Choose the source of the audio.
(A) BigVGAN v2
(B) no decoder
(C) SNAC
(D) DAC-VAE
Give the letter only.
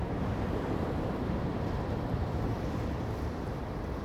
A